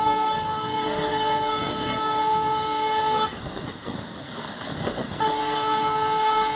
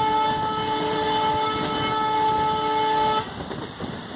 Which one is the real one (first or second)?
second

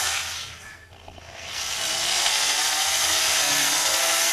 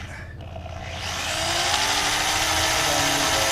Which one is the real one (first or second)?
second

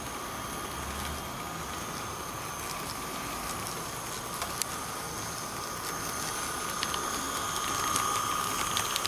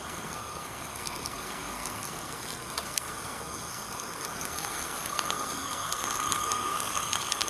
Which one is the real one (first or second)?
first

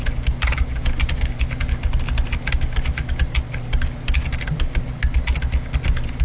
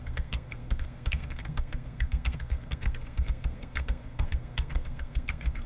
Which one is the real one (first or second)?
first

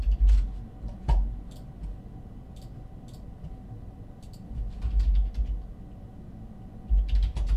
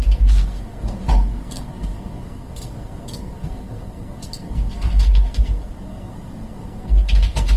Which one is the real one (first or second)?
first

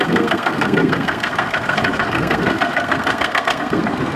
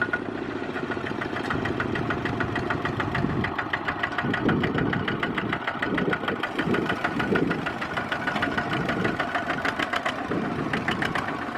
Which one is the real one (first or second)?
second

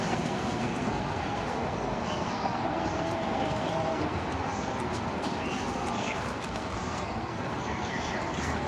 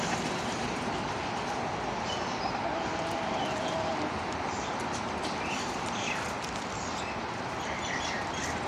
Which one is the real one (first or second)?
second